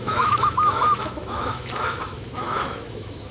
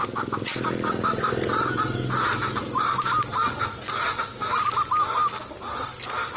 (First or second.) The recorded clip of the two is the second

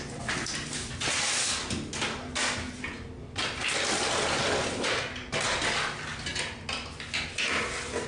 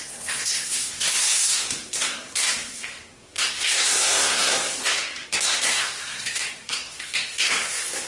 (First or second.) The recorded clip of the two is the first